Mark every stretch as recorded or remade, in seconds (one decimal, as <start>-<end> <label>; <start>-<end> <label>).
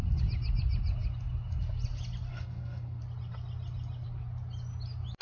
0.0-2.3 recorded; 2.3-3.0 remade; 3.0-5.2 recorded